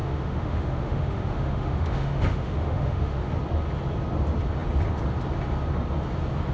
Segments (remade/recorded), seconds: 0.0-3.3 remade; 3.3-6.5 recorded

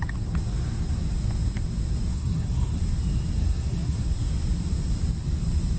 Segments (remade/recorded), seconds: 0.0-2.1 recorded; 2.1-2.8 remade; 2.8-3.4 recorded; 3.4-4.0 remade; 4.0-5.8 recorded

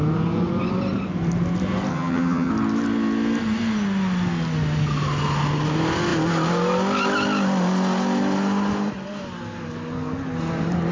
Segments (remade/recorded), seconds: 0.0-1.9 recorded; 1.9-2.5 remade; 2.5-10.9 recorded

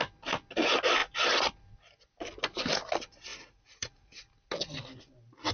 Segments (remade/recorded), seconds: 0.0-3.3 recorded; 3.3-4.2 remade; 4.2-5.5 recorded

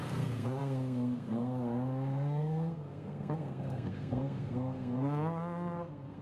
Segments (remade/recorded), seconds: 0.0-6.2 remade